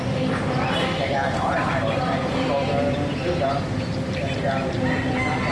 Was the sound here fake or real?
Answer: real